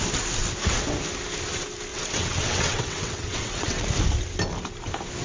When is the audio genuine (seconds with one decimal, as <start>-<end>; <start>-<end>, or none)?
0.0-1.9; 3.9-5.2

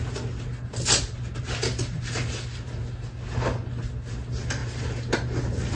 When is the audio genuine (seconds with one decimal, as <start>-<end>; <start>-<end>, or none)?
0.0-5.7